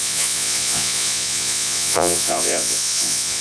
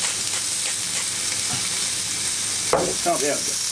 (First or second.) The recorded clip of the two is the second